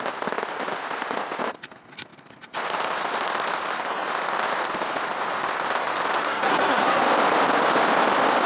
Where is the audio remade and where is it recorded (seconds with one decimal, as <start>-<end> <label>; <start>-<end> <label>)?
0.0-6.2 recorded; 6.2-7.0 remade; 7.0-8.5 recorded